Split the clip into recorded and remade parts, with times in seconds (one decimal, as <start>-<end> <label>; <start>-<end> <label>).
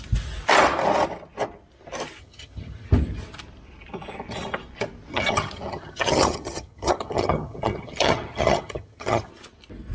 0.0-2.2 recorded; 2.2-2.9 remade; 2.9-5.1 recorded; 5.1-9.3 remade; 9.3-9.9 recorded